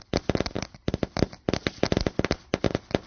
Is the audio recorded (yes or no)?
yes